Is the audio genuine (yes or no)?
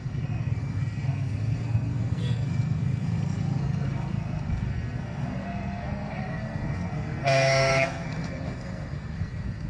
no